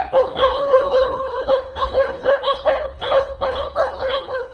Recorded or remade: remade